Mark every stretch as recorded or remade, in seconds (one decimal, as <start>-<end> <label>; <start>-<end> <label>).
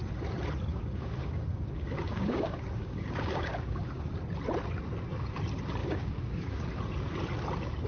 0.0-0.7 recorded; 0.7-4.1 remade; 4.1-5.8 recorded; 5.8-6.6 remade; 6.6-7.9 recorded